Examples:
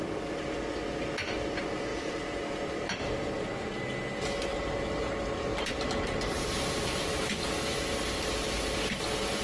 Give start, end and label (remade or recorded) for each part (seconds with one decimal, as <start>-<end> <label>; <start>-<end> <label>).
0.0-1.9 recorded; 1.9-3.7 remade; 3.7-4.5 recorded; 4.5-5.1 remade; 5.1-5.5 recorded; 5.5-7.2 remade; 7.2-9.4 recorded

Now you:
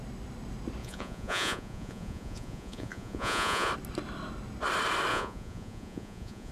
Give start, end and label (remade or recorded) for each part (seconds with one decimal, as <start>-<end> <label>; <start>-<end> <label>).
0.0-0.8 recorded; 0.8-3.7 remade; 3.7-5.1 recorded; 5.1-6.5 remade

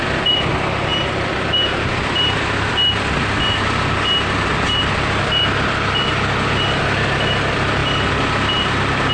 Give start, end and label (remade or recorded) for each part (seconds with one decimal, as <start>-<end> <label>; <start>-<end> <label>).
0.0-0.9 recorded; 0.9-2.7 remade; 2.7-4.5 recorded; 4.5-6.5 remade; 6.5-9.1 recorded

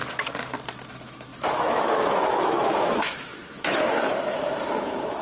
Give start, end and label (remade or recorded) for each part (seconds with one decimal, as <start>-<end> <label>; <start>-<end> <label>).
0.0-0.9 recorded; 0.9-5.2 remade

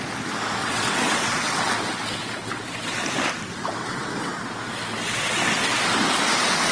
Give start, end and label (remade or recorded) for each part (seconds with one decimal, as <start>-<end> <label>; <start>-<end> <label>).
0.0-0.6 recorded; 0.6-1.7 remade; 1.7-3.8 recorded; 3.8-4.3 remade; 4.3-6.7 recorded